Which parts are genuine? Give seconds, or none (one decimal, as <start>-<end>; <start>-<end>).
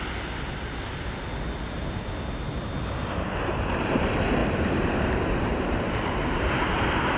0.0-4.4; 6.6-7.2